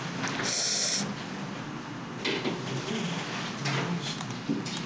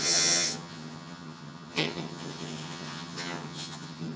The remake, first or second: second